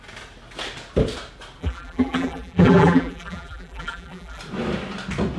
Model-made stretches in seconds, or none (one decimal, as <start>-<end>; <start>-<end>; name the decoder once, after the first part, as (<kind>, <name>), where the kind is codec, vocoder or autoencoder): 1.6-4.4 (vocoder, BigVGAN v2)